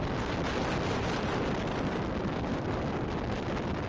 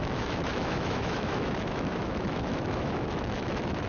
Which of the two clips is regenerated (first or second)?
second